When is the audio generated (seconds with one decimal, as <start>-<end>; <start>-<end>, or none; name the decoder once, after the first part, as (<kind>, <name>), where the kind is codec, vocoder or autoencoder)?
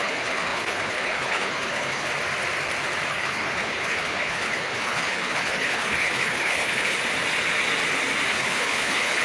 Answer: 0.0-2.1 (codec, HILCodec); 3.1-7.0; 8.3-9.2